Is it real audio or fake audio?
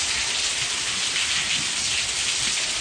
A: real